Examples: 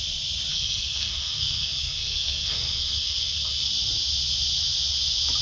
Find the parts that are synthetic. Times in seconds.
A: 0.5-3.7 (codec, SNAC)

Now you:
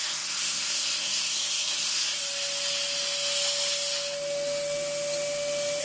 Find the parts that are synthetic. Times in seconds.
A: 0.0-2.2 (codec, SNAC)

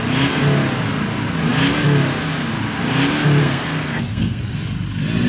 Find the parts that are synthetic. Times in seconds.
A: 3.4-4.4 (codec, SNAC)

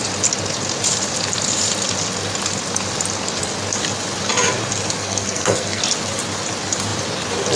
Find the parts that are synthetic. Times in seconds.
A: 5.0-5.8 (codec, SNAC)

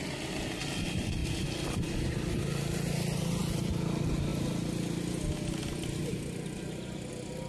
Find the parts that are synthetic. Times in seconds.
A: none

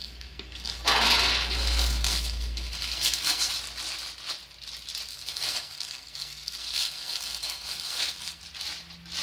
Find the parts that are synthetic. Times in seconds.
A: 0.0-3.5 (codec, SNAC); 5.1-8.4

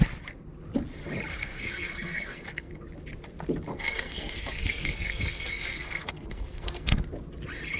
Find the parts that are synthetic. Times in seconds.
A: 1.3-2.8 (codec, SNAC); 3.7-7.0